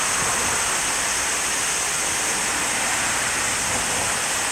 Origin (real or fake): real